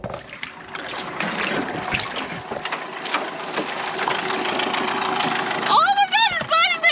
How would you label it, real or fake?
real